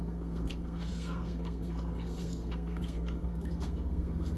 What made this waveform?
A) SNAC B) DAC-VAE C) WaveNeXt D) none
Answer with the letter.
A